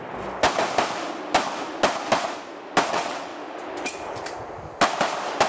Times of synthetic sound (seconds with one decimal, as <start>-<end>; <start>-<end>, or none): 2.9-3.3